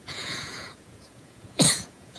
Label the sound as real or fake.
fake